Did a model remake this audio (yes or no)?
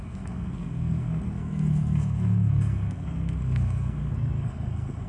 yes